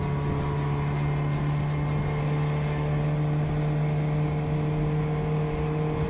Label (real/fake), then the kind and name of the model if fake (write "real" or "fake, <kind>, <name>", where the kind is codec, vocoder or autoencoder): real